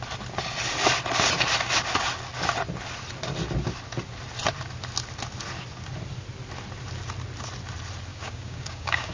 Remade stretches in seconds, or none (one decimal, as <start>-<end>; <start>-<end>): 8.1-9.1